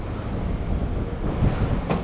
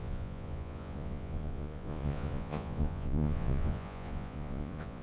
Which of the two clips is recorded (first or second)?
first